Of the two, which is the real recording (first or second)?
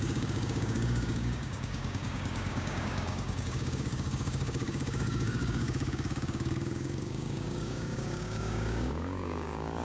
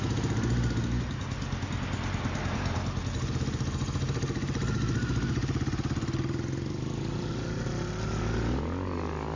second